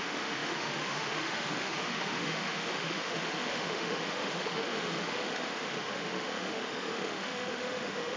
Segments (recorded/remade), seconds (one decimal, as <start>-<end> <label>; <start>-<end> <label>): 0.0-8.2 remade